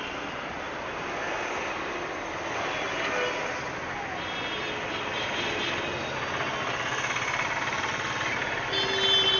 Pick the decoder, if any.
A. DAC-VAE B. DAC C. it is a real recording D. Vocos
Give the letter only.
C